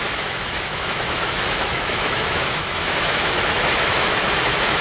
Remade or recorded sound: remade